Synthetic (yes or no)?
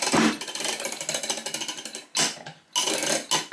no